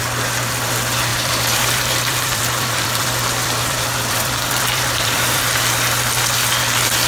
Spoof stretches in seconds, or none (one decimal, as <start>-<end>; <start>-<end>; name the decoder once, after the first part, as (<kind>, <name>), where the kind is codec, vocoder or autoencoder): 1.1-5.4 (vocoder, BigVGAN v2)